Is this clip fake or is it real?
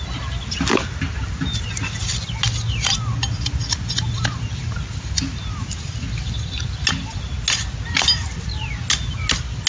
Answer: real